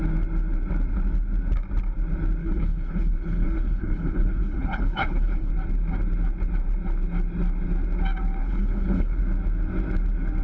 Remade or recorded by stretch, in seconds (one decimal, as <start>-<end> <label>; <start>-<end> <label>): 0.0-2.4 recorded; 2.4-5.5 remade; 5.5-8.4 recorded; 8.4-9.2 remade; 9.2-10.4 recorded